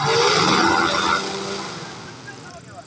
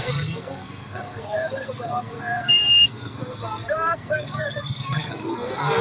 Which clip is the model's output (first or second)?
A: second